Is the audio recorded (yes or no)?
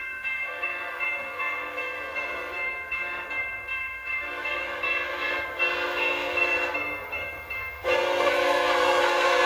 no